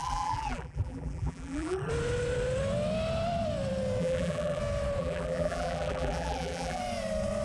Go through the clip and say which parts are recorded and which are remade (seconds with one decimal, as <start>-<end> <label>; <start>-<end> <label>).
0.0-1.9 remade; 1.9-4.0 recorded; 4.0-4.6 remade; 4.6-5.0 recorded; 5.0-6.8 remade; 6.8-7.4 recorded